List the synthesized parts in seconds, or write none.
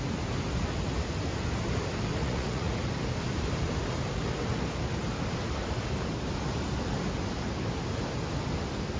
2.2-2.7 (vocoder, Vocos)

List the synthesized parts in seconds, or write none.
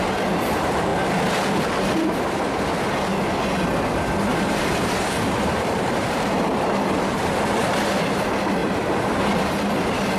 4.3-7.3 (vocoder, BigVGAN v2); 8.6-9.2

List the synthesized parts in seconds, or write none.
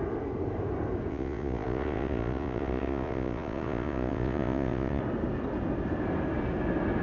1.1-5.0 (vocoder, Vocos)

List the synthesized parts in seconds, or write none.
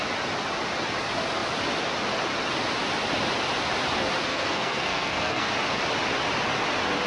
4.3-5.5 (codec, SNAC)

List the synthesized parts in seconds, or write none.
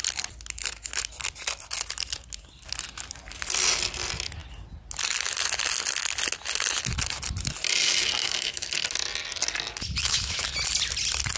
8.2-8.7 (autoencoder, DAC-VAE); 10.0-10.5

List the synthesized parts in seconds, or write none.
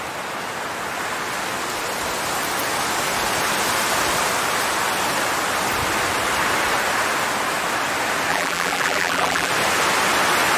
8.3-9.5 (vocoder, BigVGAN v2)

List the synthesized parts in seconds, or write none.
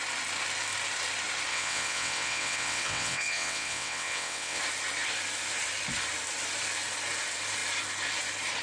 1.5-4.6 (vocoder, WaveNeXt)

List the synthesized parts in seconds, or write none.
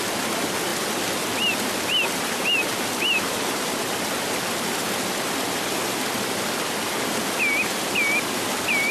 none